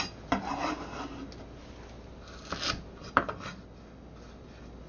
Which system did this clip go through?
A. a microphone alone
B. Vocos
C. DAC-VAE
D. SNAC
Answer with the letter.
A